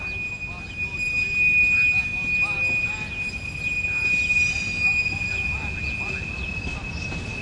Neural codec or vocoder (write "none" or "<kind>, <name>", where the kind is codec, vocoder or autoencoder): none